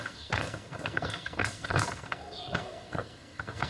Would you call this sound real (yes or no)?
no